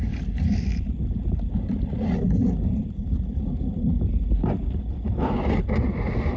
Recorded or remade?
recorded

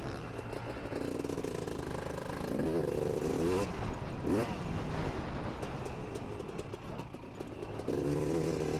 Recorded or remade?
recorded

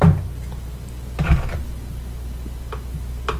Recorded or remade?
recorded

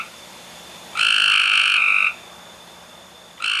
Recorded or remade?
remade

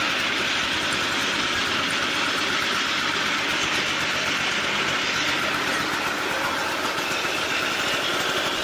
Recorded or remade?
remade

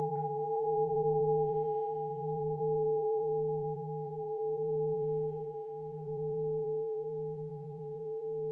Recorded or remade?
remade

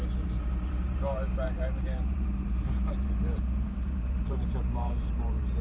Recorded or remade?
remade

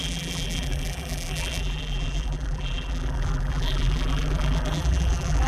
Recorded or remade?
remade